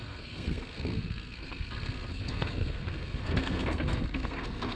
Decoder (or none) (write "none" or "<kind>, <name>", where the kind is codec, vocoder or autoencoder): codec, SNAC